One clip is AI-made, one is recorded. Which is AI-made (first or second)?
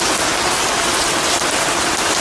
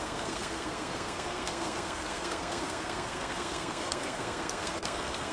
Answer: second